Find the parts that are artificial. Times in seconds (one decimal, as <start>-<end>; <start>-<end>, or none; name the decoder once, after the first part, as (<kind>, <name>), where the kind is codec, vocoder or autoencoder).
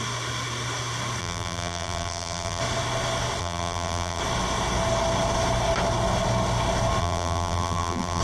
1.2-2.6 (vocoder, BigVGAN v2); 3.4-4.2; 7.0-8.2